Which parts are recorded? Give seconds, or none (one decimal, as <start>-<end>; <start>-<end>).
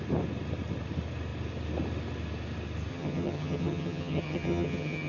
0.0-2.9